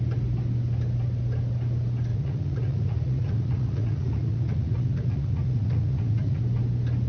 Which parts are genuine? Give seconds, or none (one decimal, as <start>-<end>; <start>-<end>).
0.0-2.1; 6.4-7.1